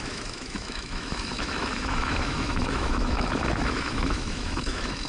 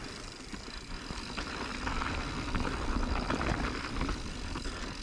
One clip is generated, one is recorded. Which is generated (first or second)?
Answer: first